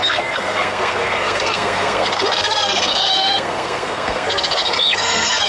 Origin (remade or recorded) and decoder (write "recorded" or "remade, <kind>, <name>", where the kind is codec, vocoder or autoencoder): remade, codec, SNAC